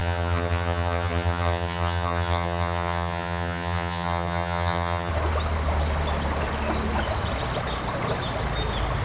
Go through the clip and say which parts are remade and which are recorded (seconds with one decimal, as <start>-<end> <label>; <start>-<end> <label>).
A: 0.0-5.1 remade; 5.1-9.0 recorded

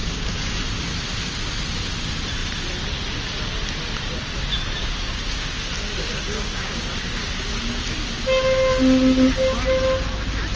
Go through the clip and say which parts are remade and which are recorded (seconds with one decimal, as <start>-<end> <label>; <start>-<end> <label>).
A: 0.0-0.6 remade; 0.6-4.8 recorded; 4.8-5.7 remade; 5.7-6.2 recorded; 6.2-7.5 remade; 7.5-10.6 recorded